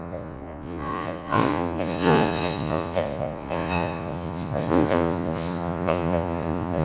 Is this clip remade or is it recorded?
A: remade